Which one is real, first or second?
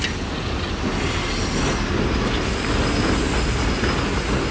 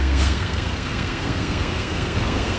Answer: first